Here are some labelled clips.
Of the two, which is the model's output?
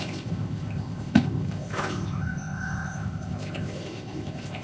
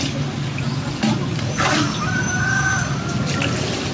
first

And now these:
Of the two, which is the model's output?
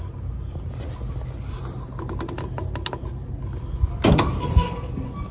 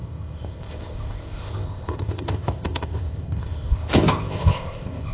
second